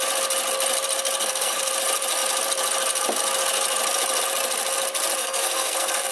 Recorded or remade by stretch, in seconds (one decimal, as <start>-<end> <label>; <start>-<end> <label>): 0.0-1.2 recorded; 1.2-1.7 remade; 1.7-5.2 recorded; 5.2-6.1 remade